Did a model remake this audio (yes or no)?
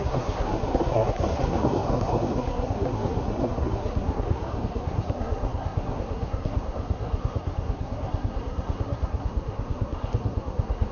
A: yes